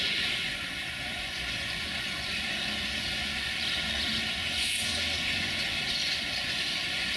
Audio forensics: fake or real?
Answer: fake